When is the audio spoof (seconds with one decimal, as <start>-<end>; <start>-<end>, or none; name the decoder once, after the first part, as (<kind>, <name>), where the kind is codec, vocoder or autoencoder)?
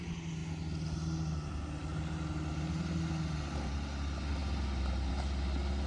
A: none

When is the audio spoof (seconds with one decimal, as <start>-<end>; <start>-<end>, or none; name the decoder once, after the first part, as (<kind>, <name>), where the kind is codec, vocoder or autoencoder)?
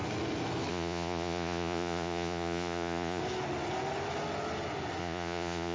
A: 0.7-3.2 (vocoder, Vocos); 5.0-5.7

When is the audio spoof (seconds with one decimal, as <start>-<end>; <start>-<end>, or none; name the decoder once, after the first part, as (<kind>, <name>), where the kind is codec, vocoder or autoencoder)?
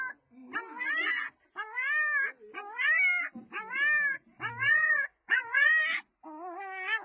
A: 4.7-5.7 (vocoder, Vocos)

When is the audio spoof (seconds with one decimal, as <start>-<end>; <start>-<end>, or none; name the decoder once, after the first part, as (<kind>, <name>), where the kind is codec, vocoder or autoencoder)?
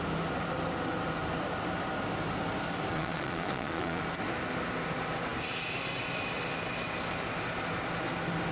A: 2.9-4.0 (vocoder, Vocos)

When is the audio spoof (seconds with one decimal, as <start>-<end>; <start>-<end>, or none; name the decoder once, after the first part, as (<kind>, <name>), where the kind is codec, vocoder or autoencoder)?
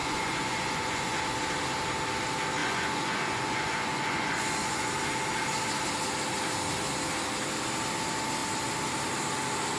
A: 0.0-1.2 (vocoder, Vocos); 2.6-4.9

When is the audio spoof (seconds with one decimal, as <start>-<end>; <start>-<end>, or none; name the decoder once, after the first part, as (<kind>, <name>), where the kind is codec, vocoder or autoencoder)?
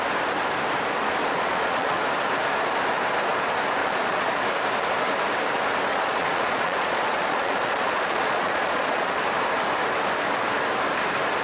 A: 1.2-2.0 (vocoder, Vocos); 3.8-4.3; 5.9-9.2